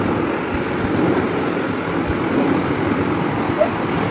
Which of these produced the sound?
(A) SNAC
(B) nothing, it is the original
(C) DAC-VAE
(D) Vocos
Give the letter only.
B